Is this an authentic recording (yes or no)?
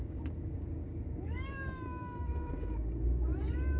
no